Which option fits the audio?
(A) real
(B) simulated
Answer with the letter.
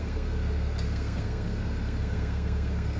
B